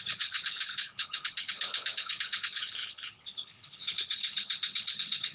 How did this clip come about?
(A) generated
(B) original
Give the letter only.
A